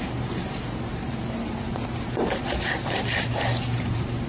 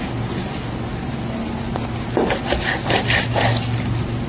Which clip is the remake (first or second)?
first